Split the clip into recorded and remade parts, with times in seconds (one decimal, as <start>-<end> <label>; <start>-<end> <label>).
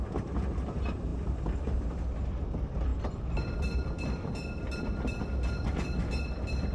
0.0-6.7 recorded